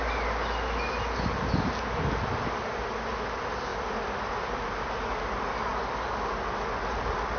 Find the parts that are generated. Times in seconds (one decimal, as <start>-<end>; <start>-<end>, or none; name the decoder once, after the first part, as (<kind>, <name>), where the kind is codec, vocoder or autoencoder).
3.7-4.3 (vocoder, BigVGAN v2)